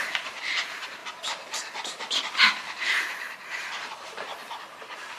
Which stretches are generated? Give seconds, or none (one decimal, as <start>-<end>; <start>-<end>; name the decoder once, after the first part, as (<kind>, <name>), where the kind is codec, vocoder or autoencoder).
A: 0.0-1.0 (vocoder, BigVGAN v2); 3.9-4.3